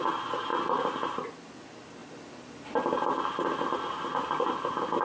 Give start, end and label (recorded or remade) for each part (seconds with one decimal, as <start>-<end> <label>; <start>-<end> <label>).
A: 0.0-5.0 recorded